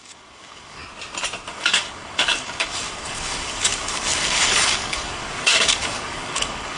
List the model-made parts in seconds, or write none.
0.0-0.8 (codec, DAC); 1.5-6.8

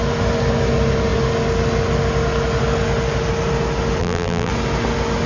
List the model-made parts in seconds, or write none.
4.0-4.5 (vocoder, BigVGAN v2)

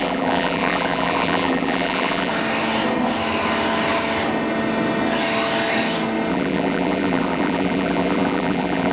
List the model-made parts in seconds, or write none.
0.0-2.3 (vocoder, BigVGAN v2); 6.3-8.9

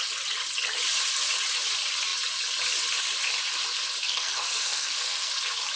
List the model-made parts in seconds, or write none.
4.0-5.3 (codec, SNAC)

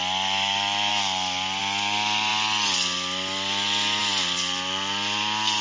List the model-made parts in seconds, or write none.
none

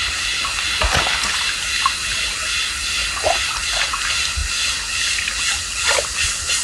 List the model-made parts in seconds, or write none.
none

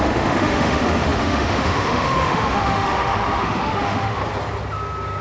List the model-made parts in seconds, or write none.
0.0-4.2 (autoencoder, DAC-VAE)

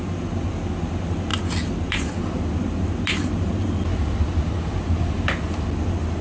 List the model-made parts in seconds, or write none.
none